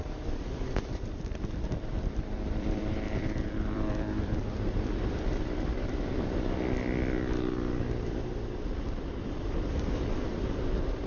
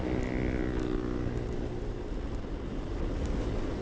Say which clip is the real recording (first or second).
second